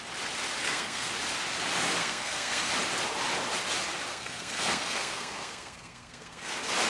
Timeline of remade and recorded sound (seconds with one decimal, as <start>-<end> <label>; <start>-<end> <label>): 0.0-0.6 recorded; 0.6-1.1 remade; 1.1-2.0 recorded; 2.0-2.7 remade; 2.7-4.1 recorded; 4.1-6.5 remade; 6.5-6.9 recorded